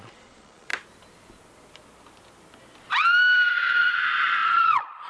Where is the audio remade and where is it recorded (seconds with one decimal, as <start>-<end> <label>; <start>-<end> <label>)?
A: 0.0-0.7 remade; 0.7-3.8 recorded; 3.8-5.1 remade